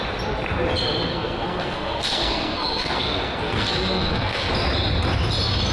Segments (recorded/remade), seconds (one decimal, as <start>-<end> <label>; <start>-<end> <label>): 0.0-1.1 recorded; 1.1-4.5 remade; 4.5-5.7 recorded